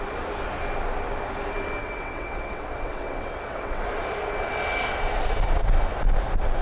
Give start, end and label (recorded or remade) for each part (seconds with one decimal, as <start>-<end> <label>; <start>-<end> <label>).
0.0-1.8 recorded; 1.8-3.8 remade; 3.8-6.6 recorded